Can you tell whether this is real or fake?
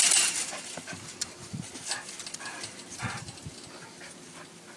real